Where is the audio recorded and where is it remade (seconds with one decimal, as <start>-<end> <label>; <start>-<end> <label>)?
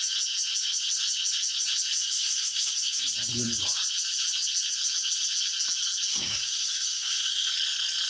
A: 0.0-2.0 recorded; 2.0-3.0 remade; 3.0-6.1 recorded; 6.1-7.5 remade; 7.5-8.1 recorded